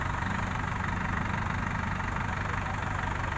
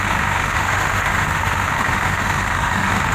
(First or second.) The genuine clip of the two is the first